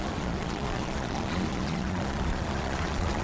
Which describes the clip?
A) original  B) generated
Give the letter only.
B